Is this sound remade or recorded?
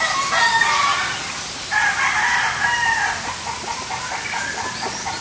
recorded